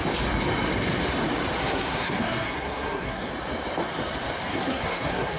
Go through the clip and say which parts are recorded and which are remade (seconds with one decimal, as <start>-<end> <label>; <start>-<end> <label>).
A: 0.0-1.6 recorded; 1.6-3.3 remade; 3.3-4.5 recorded; 4.5-5.4 remade